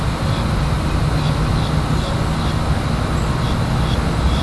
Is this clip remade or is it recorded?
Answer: recorded